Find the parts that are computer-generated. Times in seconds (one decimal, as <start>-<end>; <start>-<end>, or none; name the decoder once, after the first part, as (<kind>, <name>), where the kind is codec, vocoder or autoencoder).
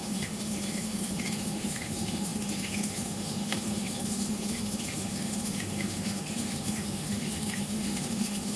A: 0.0-8.6 (autoencoder, DAC-VAE)